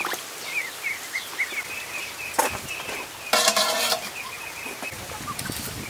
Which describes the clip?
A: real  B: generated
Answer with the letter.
A